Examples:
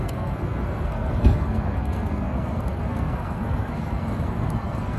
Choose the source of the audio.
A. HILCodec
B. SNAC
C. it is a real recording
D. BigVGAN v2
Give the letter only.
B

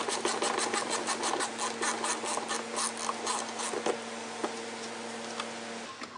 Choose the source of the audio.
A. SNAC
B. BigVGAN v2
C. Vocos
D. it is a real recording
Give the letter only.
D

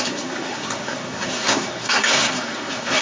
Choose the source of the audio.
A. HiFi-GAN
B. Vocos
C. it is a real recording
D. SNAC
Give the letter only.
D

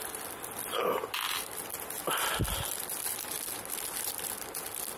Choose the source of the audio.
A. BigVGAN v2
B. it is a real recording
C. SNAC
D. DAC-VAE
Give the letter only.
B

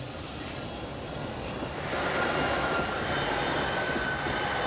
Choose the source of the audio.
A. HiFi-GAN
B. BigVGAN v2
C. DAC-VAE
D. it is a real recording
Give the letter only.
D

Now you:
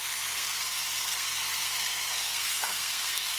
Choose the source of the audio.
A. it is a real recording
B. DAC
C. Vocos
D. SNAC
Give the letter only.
D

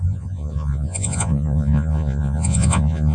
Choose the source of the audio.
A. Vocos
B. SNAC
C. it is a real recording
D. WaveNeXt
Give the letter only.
A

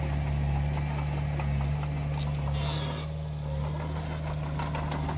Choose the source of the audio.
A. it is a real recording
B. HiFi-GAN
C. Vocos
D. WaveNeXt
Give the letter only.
A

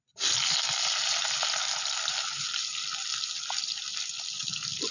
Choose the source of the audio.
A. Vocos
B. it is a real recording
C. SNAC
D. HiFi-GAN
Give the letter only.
B